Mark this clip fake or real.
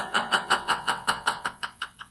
fake